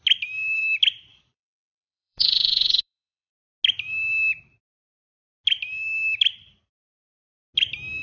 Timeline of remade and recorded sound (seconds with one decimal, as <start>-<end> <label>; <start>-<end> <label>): 0.0-1.1 recorded; 1.1-3.3 remade; 3.3-8.0 recorded